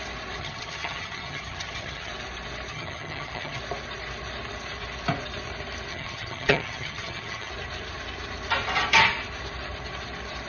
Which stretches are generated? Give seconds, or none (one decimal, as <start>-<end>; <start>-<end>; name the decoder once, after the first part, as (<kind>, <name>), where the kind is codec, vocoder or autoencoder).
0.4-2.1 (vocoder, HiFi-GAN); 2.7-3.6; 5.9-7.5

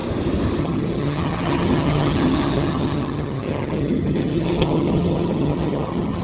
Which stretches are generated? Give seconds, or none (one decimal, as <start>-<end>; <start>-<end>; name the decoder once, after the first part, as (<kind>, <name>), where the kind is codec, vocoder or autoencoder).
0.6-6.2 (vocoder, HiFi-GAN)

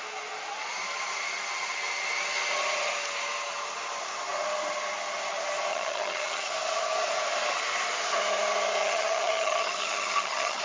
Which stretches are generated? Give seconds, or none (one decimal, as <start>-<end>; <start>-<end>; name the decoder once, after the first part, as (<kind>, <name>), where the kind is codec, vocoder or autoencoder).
5.7-6.5 (vocoder, HiFi-GAN); 8.8-10.6

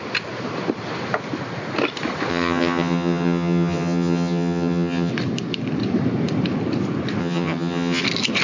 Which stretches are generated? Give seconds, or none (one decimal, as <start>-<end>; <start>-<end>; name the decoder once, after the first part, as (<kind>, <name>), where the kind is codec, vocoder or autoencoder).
2.3-5.1 (vocoder, HiFi-GAN); 7.2-8.0

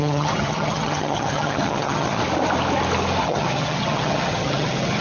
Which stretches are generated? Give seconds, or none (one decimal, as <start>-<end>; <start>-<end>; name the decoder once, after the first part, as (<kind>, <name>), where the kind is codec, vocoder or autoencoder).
0.0-2.2 (vocoder, HiFi-GAN); 3.2-5.0

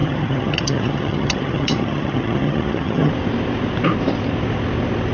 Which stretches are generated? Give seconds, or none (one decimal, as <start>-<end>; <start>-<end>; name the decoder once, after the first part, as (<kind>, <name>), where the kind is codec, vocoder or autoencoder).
0.0-3.1 (vocoder, HiFi-GAN)